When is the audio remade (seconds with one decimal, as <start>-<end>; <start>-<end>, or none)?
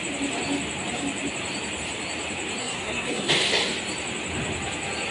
2.6-3.3